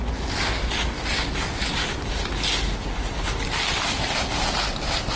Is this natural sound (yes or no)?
yes